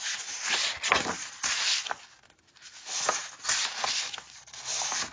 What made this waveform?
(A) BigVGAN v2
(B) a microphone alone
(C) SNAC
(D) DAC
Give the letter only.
B